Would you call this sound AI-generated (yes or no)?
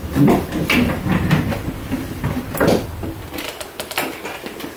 no